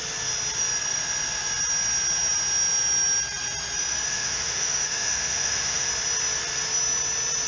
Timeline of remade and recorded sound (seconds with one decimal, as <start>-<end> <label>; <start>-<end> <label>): 0.0-4.1 recorded; 4.1-5.9 remade; 5.9-7.5 recorded